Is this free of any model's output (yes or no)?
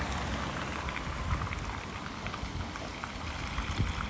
yes